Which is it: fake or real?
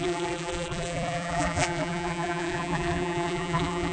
fake